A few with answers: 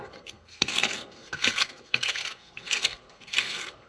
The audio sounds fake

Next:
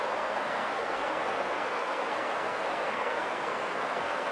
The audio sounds fake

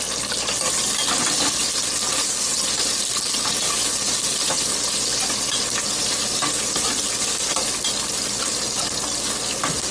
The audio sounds real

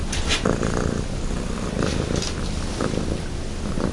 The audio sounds real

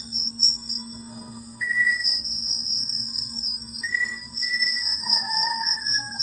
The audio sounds fake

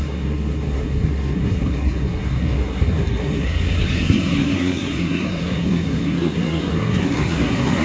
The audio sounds fake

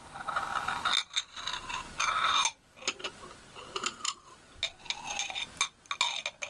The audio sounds real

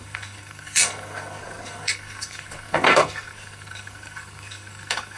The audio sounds fake